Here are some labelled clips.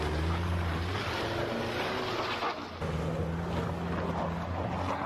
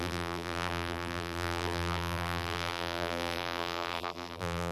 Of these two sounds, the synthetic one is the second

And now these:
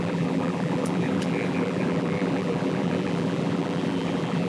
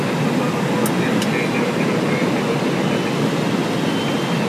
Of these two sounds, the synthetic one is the first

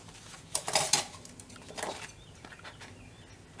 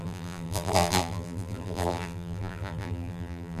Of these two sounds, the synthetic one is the second